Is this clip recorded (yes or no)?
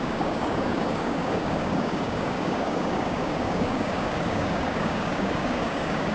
no